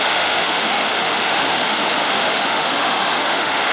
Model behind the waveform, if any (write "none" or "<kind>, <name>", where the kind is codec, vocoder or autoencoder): autoencoder, DAC-VAE